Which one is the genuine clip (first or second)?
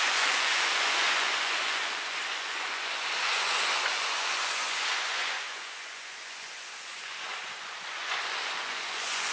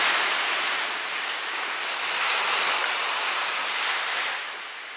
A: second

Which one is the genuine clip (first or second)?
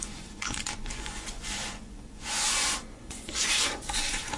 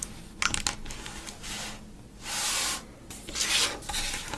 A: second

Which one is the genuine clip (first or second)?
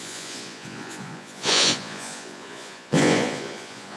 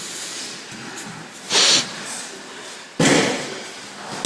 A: second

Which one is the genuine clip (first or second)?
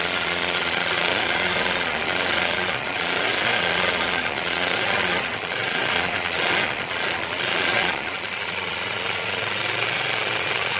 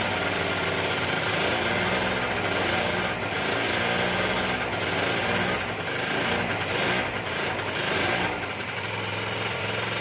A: second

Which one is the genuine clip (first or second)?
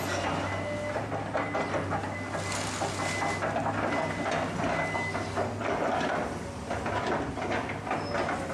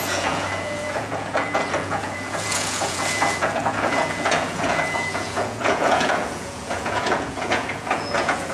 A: first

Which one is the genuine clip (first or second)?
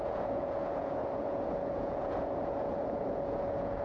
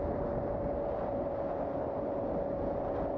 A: second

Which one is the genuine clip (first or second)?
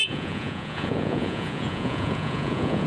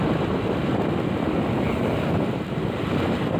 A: second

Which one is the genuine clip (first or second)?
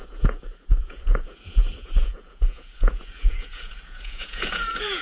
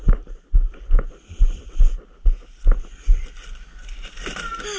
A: second